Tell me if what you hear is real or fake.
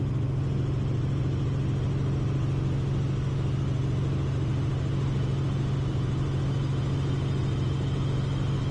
real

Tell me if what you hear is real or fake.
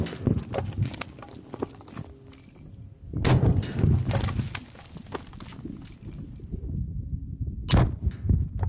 real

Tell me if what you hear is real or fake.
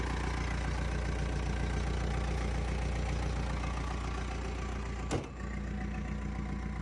real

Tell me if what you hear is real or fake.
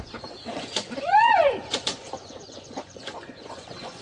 fake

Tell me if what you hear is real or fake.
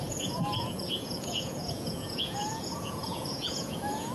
fake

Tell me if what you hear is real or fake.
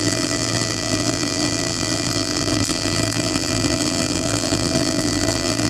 fake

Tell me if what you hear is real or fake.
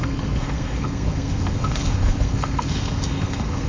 fake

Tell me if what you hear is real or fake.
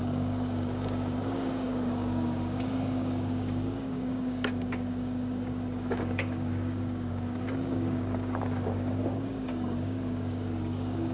fake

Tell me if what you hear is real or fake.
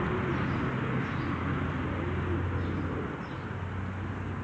real